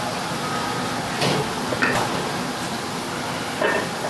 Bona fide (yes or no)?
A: yes